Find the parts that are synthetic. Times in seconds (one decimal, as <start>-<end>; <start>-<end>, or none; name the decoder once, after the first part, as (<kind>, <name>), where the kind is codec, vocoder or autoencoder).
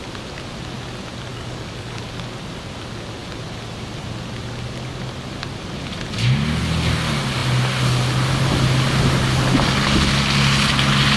1.3-2.1 (codec, DAC)